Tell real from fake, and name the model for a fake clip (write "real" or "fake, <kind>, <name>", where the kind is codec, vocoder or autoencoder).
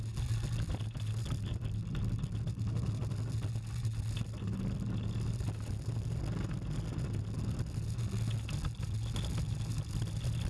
real